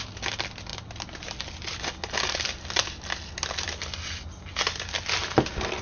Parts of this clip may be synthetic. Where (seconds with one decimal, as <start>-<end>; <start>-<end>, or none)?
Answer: none